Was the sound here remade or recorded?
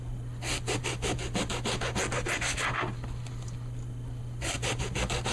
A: recorded